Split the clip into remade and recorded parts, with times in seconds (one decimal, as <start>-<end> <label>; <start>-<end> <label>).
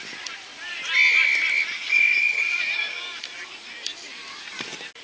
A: 0.0-5.0 recorded